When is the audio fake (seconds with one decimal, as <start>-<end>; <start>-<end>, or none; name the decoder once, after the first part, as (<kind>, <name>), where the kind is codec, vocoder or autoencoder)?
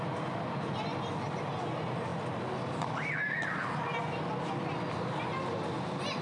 none